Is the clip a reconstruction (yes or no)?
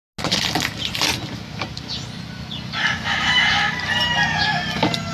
no